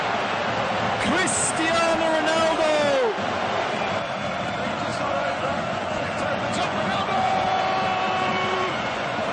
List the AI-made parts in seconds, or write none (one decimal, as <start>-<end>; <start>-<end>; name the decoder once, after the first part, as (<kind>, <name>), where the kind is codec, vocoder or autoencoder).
4.9-7.6 (vocoder, Vocos); 8.3-9.3